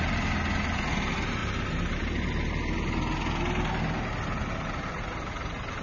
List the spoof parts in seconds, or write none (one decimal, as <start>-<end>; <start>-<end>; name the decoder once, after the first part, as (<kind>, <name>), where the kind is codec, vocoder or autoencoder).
none